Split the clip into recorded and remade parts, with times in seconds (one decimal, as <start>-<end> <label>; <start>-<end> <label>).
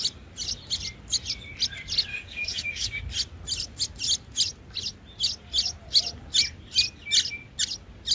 0.0-2.1 recorded; 2.1-3.0 remade; 3.0-8.1 recorded